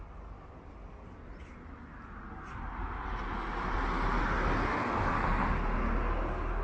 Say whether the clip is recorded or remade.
recorded